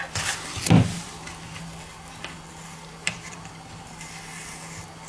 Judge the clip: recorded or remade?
recorded